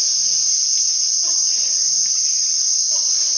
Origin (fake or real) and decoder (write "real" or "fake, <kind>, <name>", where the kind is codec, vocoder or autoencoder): real